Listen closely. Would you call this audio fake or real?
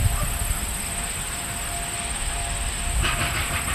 real